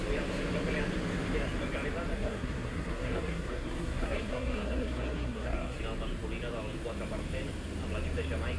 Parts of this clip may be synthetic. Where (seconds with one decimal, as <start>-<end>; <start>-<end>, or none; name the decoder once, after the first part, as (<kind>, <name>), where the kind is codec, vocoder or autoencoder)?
2.1-5.8 (codec, SNAC)